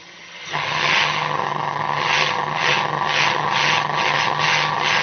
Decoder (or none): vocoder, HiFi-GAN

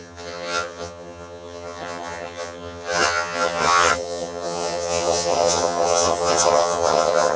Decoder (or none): vocoder, HiFi-GAN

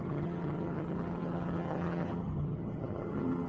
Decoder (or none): vocoder, HiFi-GAN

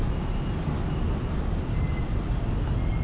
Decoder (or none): none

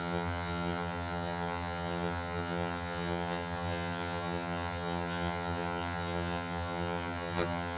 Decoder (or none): vocoder, HiFi-GAN